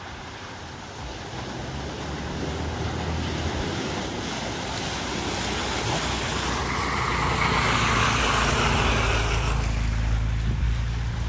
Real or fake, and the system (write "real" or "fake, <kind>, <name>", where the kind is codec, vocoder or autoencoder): real